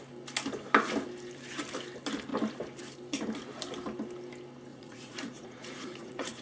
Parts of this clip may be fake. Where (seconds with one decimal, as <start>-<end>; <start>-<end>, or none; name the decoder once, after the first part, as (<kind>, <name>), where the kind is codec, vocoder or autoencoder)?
4.7-6.4 (vocoder, Vocos)

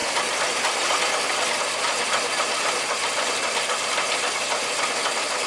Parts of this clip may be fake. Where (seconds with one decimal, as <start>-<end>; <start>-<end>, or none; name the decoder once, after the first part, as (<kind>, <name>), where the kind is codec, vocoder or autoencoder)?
none